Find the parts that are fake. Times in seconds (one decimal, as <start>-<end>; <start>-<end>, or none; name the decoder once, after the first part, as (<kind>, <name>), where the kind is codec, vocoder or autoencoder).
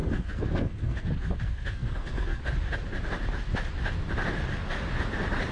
0.0-2.4 (codec, SNAC)